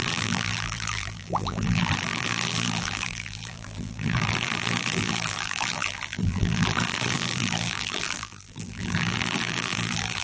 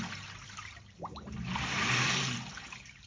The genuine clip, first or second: second